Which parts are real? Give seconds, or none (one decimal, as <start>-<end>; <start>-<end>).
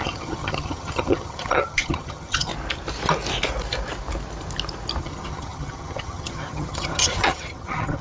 2.5-5.0